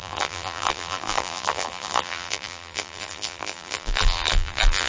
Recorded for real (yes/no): no